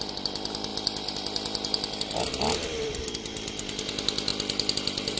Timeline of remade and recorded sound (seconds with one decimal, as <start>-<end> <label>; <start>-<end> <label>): 0.0-5.2 recorded